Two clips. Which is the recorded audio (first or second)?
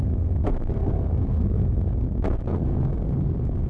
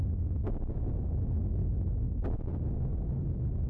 second